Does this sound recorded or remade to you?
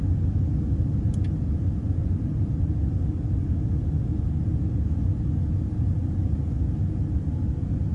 recorded